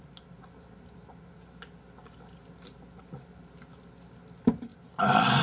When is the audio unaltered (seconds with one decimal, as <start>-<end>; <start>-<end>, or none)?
0.0-5.4